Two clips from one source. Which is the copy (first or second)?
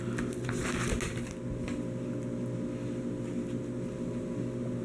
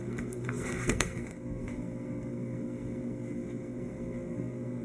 second